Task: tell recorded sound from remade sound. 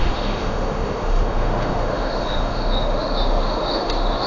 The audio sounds remade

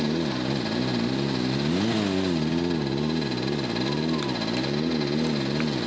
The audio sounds recorded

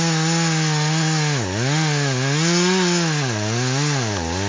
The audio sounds recorded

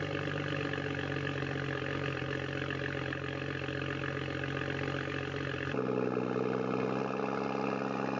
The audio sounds recorded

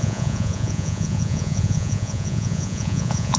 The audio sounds remade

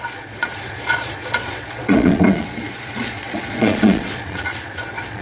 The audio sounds remade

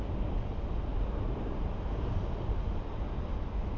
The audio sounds recorded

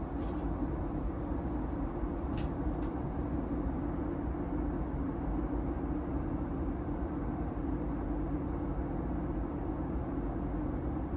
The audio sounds recorded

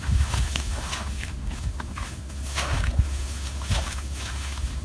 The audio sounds remade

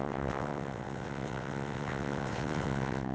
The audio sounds remade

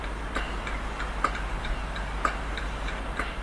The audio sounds recorded